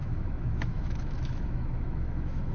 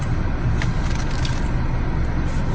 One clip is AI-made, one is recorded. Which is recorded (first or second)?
second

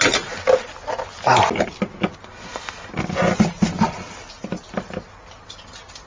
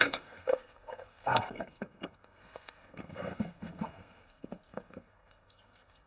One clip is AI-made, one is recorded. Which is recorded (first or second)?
first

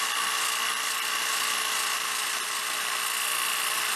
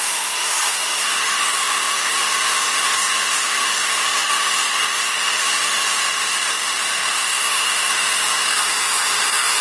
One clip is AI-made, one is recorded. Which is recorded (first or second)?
first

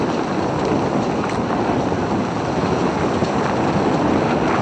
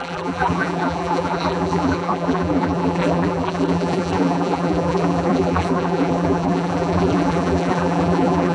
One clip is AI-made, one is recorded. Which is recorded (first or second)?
first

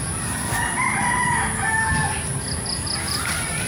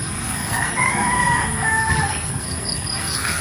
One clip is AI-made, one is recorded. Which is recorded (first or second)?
first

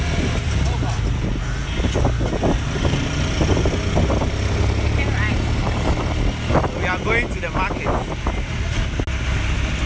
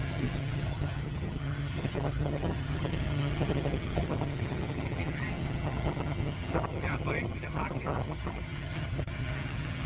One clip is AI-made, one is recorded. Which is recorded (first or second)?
first